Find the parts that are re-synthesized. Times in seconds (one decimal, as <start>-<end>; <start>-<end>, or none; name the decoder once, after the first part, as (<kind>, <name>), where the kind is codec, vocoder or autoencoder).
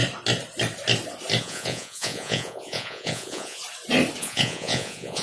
1.4-3.6 (vocoder, Vocos); 4.2-5.2